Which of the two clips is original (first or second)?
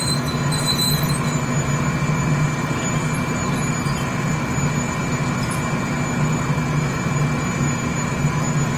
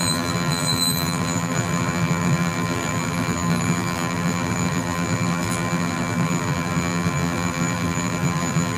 first